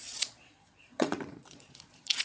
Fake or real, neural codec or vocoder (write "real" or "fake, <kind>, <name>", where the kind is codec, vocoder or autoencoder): fake, vocoder, Vocos